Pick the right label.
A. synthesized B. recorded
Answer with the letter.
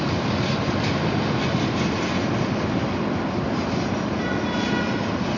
B